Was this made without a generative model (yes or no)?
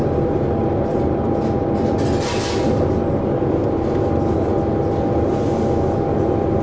yes